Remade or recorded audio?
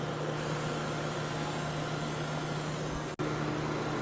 recorded